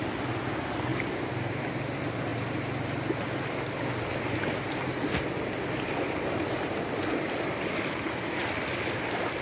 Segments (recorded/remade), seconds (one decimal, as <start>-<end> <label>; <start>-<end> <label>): 0.0-9.4 recorded